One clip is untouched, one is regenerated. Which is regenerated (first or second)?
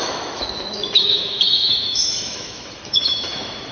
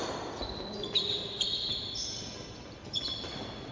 first